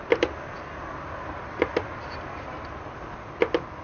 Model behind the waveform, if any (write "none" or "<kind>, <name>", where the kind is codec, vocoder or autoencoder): none